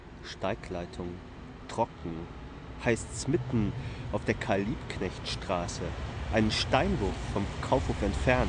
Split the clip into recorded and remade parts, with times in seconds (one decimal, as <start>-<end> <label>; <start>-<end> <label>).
0.0-8.5 recorded